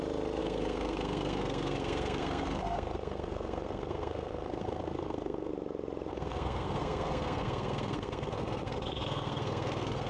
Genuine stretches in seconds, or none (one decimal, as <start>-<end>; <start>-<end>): 0.0-0.4; 5.5-6.1